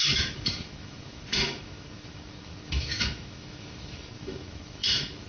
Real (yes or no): no